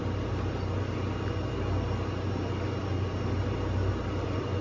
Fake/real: real